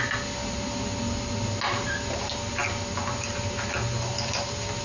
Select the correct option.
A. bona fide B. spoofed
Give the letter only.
A